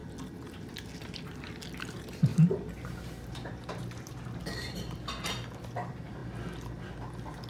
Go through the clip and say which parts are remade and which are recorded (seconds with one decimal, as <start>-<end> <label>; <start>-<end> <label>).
0.0-2.3 recorded; 2.3-5.1 remade; 5.1-7.5 recorded